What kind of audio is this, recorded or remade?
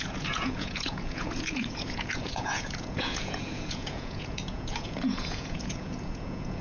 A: remade